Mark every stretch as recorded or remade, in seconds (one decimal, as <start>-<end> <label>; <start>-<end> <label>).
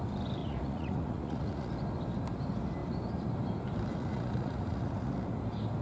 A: 0.0-0.4 recorded; 0.4-1.7 remade; 1.7-3.9 recorded; 3.9-5.1 remade; 5.1-5.8 recorded